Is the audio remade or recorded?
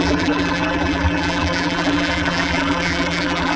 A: remade